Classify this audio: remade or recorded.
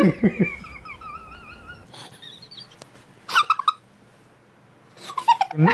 recorded